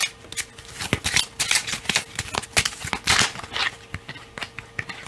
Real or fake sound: real